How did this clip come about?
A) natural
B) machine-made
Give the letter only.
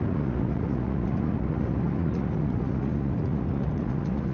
B